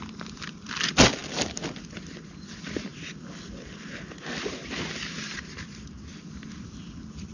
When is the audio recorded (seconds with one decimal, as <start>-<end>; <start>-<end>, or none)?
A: 0.0-7.3